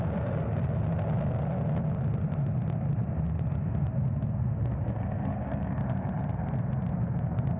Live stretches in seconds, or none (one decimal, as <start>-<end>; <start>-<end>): 0.0-5.3; 5.8-7.6